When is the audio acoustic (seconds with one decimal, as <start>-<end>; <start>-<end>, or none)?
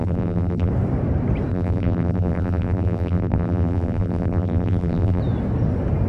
0.7-1.5; 5.2-6.1